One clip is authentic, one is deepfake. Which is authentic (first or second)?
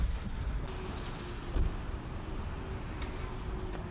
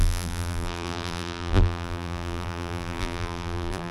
first